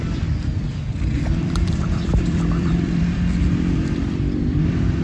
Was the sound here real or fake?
fake